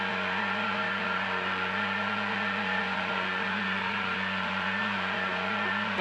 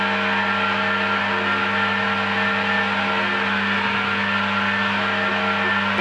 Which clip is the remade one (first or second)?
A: first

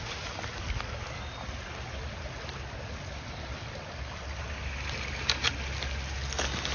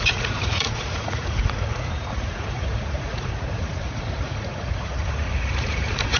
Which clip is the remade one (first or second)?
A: second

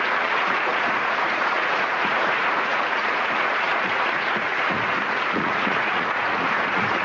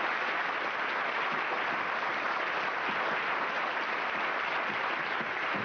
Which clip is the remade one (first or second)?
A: first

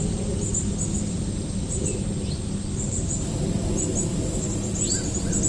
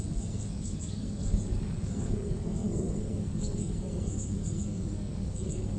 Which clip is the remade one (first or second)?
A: second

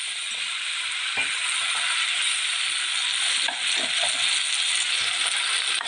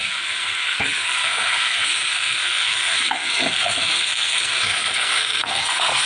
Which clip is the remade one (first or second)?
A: second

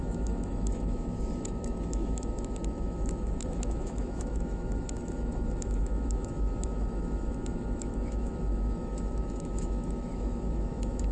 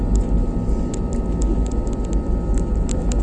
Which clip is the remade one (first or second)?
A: first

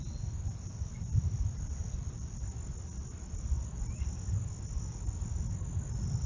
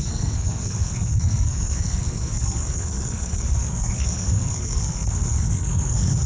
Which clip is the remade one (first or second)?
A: second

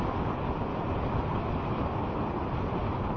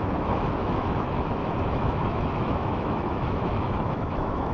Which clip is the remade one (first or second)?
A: second